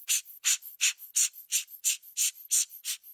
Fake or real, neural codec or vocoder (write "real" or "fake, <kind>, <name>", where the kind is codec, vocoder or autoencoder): real